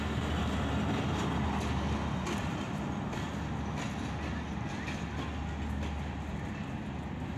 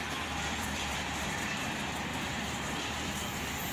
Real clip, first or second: first